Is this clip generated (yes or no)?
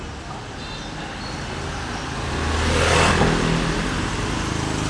no